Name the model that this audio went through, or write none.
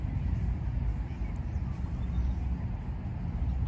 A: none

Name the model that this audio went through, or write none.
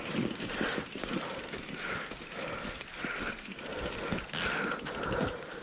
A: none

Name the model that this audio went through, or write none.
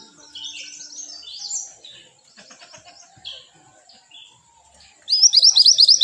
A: none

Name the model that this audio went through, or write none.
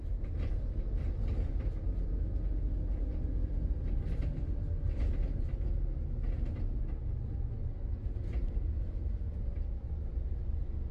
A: none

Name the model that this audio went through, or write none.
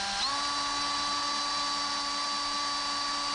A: none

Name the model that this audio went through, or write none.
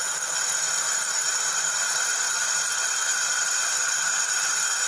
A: none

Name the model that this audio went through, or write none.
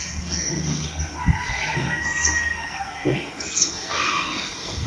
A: codec, SNAC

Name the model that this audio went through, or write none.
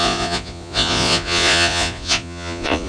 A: vocoder, Vocos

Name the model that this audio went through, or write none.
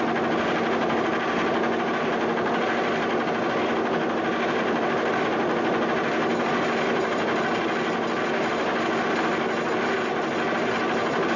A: none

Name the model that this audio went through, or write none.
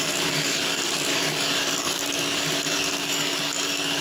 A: codec, DAC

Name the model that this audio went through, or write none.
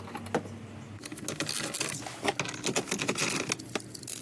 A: none